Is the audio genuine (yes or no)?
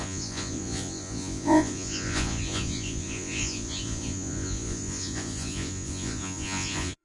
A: no